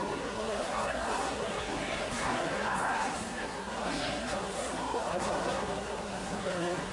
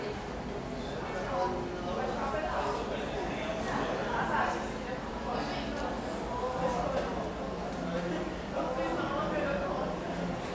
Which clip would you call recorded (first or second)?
second